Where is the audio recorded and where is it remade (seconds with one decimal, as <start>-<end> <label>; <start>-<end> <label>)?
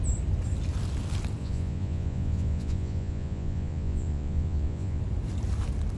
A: 0.0-1.4 recorded; 1.4-5.0 remade; 5.0-6.0 recorded